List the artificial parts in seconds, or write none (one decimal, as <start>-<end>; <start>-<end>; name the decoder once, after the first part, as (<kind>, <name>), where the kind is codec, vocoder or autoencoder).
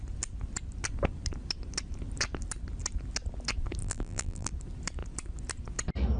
3.8-4.5 (vocoder, BigVGAN v2)